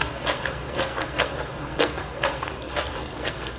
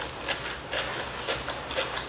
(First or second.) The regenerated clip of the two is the first